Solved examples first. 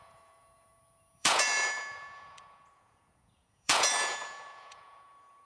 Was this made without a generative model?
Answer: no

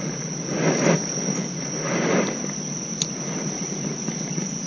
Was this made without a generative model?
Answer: yes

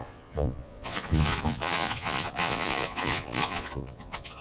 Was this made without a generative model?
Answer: no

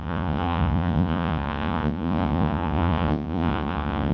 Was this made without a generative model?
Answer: no